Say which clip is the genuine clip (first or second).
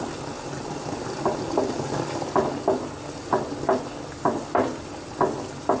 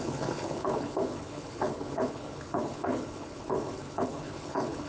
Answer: first